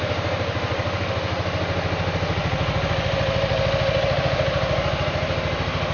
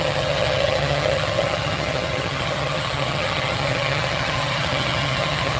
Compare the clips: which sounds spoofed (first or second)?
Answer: second